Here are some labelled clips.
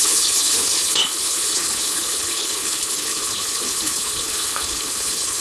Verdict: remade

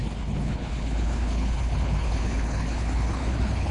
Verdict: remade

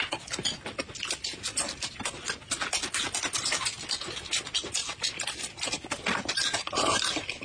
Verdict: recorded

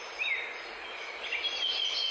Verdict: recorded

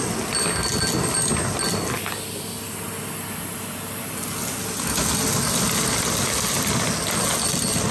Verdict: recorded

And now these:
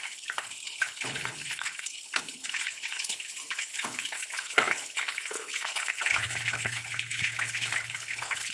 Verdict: remade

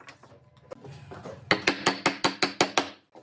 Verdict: recorded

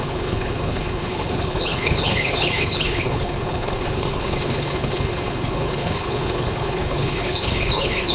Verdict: remade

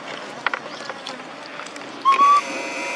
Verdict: recorded